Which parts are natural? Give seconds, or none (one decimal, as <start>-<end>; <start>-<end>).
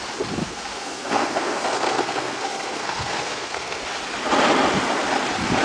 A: 0.0-0.4; 3.8-5.6